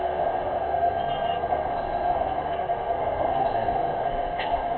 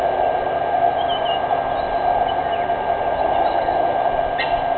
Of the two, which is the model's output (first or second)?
first